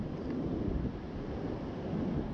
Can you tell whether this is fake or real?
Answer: real